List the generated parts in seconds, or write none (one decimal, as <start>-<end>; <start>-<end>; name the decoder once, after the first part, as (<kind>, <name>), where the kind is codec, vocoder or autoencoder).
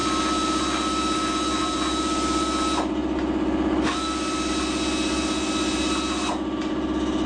none